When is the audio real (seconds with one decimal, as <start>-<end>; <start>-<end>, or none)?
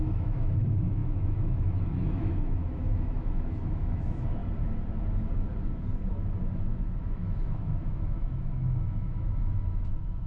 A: 4.4-6.4